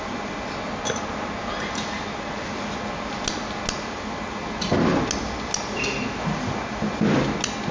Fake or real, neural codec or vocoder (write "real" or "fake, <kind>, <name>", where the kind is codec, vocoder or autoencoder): real